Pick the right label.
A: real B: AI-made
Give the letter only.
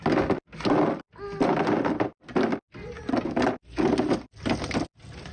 A